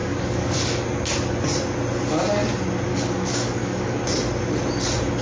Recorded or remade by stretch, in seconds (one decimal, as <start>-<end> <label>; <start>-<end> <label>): 0.0-0.7 remade; 0.7-2.9 recorded; 2.9-4.0 remade; 4.0-5.2 recorded

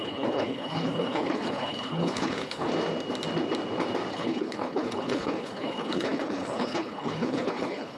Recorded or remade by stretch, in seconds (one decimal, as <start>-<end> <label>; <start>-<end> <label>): 0.0-2.7 remade; 2.7-4.1 recorded; 4.1-8.0 remade

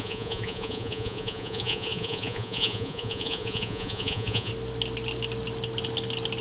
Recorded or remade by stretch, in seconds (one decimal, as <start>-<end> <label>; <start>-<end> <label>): 0.0-4.5 remade; 4.5-6.4 recorded

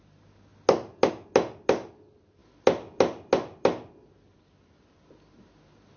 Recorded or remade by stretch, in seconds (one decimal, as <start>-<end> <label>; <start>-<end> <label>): 0.0-6.0 recorded

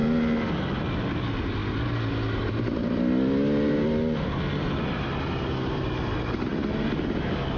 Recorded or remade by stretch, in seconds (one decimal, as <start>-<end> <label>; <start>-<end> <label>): 0.0-7.6 recorded

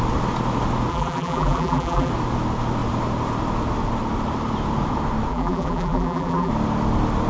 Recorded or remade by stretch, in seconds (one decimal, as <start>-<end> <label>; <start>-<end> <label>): 0.0-0.9 recorded; 0.9-2.1 remade; 2.1-5.3 recorded; 5.3-6.5 remade; 6.5-7.3 recorded

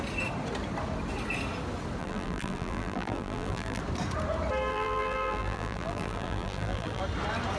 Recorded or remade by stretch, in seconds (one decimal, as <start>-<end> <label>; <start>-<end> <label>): 0.0-2.0 recorded; 2.0-3.8 remade; 3.8-4.7 recorded; 4.7-7.0 remade; 7.0-7.6 recorded

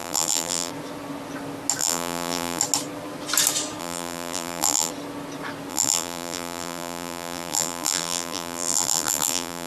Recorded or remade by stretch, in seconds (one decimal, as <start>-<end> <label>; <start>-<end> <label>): 0.0-0.7 remade; 0.7-1.8 recorded; 1.8-2.6 remade; 2.6-3.8 recorded; 3.8-4.9 remade; 4.9-5.7 recorded; 5.7-9.7 remade